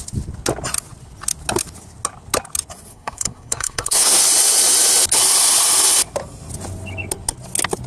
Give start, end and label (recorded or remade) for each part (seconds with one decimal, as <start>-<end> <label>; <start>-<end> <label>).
0.0-2.9 recorded; 2.9-4.2 remade; 4.2-7.9 recorded